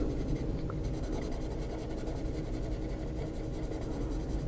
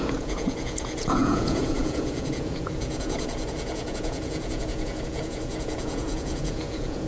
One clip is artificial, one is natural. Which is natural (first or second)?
first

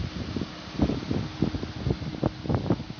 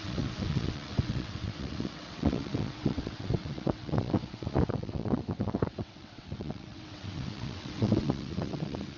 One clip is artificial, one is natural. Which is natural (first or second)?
first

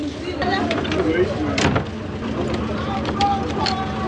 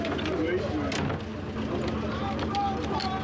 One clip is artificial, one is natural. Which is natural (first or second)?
second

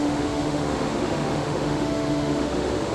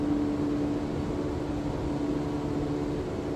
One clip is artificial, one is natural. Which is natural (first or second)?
second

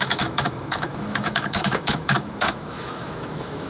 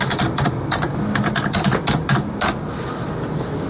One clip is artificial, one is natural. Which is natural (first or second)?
second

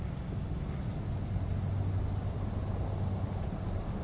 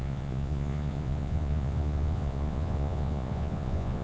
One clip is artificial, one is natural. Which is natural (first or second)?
first